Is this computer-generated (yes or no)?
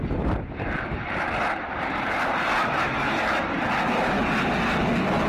no